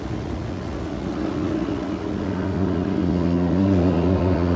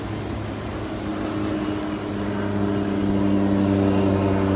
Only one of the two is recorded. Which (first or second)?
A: second